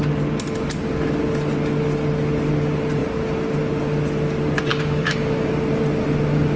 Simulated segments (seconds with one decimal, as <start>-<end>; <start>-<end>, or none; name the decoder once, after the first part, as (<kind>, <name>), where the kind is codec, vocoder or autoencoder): 4.7-5.5 (codec, DAC)